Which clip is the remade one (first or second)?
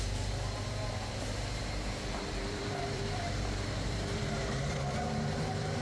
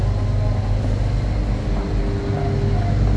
first